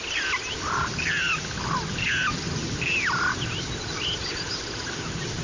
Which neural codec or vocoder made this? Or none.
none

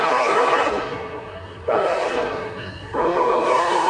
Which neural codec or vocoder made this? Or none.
codec, SNAC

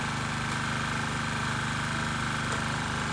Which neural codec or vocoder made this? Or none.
none